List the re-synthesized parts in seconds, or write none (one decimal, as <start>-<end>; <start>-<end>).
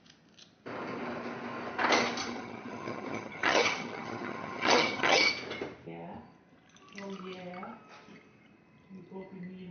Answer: 2.2-5.3